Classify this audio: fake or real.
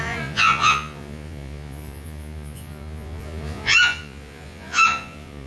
fake